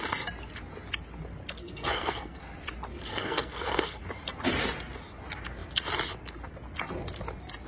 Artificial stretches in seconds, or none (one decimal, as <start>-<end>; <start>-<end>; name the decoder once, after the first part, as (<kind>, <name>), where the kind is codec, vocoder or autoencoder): 1.6-2.4 (codec, SNAC); 3.1-4.0